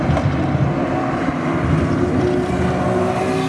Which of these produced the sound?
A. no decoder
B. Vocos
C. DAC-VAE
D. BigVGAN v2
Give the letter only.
A